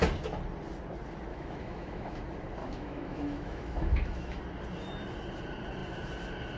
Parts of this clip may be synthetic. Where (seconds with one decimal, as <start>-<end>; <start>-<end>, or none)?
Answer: 1.3-2.2; 2.6-4.4